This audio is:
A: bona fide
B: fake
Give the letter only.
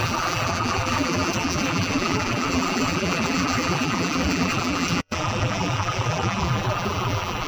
B